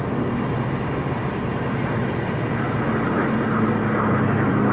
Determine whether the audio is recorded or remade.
recorded